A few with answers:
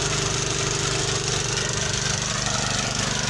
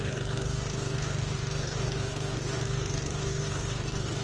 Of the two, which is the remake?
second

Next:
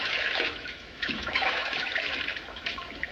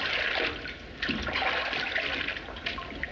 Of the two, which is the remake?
first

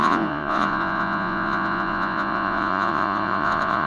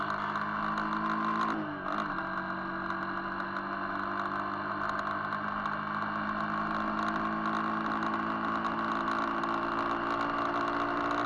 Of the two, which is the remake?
first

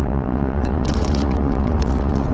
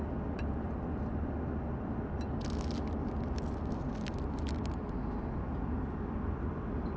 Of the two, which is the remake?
first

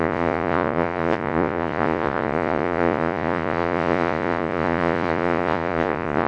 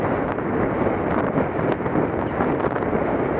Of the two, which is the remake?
first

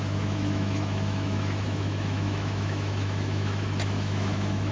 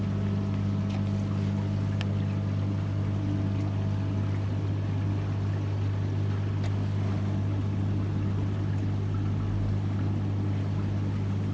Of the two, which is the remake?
first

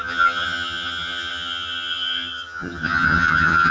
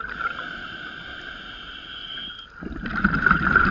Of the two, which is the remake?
first